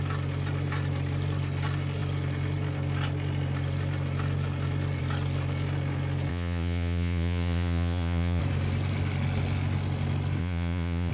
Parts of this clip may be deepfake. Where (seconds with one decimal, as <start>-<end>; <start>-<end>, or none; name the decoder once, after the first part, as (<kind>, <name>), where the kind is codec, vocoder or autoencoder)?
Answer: 6.3-8.4 (vocoder, Vocos); 10.4-11.1